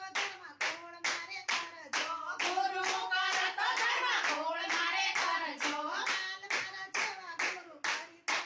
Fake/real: real